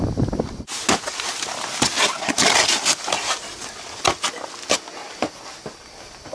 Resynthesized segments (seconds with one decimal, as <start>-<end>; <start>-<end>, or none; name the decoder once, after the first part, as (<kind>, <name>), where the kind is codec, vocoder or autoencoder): 5.0-6.3 (vocoder, BigVGAN v2)